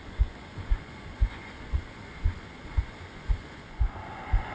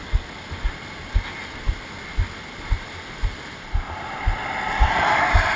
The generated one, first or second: first